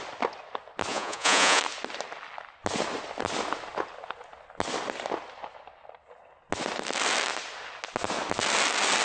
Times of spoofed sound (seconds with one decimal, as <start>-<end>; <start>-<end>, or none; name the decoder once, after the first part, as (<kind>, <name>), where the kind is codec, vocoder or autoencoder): 0.9-1.6 (vocoder, Vocos)